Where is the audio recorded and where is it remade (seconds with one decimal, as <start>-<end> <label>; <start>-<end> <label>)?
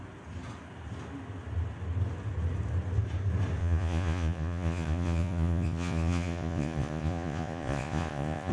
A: 0.0-3.6 recorded; 3.6-8.5 remade